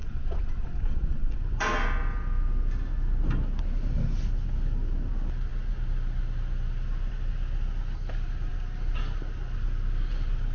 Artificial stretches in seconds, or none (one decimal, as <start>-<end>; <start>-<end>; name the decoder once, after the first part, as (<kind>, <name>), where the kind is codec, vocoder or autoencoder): 0.0-1.4 (vocoder, Vocos)